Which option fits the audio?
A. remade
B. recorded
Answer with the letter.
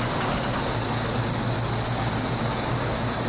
B